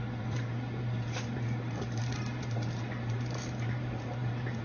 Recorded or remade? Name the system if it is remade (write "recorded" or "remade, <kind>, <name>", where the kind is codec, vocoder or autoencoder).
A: remade, vocoder, BigVGAN v2